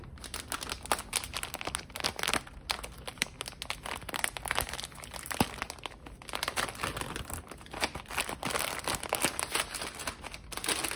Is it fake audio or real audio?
real